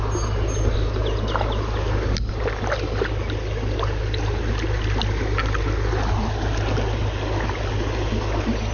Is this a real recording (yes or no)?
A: yes